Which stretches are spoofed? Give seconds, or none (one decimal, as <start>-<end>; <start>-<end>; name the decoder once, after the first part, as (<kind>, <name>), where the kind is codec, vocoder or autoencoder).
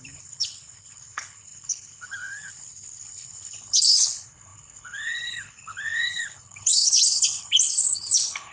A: 0.0-8.5 (codec, HILCodec)